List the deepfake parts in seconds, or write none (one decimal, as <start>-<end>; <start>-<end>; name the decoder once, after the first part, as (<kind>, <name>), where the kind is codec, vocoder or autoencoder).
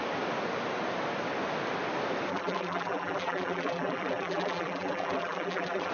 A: 2.3-5.9 (vocoder, BigVGAN v2)